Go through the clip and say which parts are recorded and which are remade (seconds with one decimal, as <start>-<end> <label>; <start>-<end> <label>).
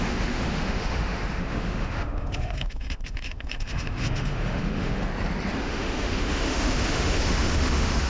0.0-5.1 remade; 5.1-5.6 recorded; 5.6-8.1 remade